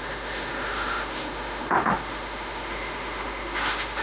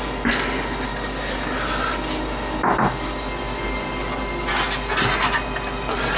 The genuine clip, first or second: second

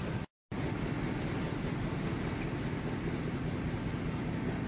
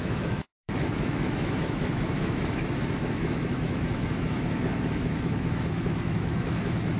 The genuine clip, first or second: first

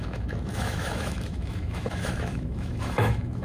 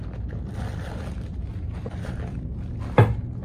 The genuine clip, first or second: second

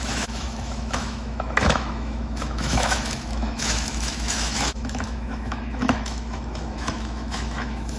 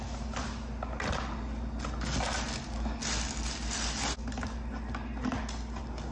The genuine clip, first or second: second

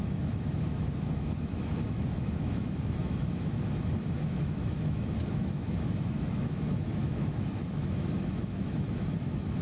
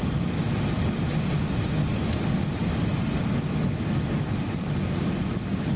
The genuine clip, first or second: second